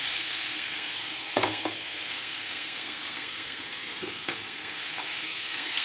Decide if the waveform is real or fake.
fake